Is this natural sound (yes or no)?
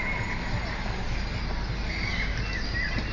yes